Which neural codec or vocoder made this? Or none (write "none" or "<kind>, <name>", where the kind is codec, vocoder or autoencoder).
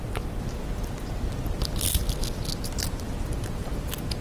none